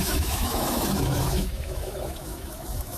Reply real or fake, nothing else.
fake